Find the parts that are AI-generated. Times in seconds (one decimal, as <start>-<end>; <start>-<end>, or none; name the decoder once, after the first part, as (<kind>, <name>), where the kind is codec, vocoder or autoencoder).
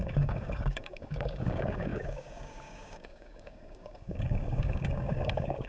0.0-5.7 (codec, DAC)